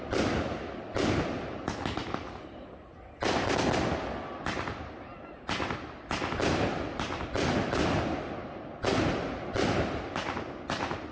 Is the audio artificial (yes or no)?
no